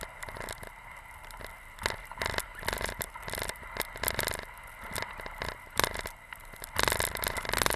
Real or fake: real